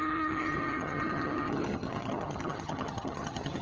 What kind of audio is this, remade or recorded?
remade